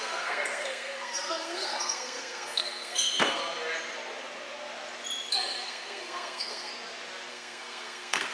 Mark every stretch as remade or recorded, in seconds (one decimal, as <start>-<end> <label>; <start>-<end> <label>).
0.0-3.4 remade; 3.4-5.3 recorded; 5.3-6.7 remade; 6.7-7.3 recorded; 7.3-8.3 remade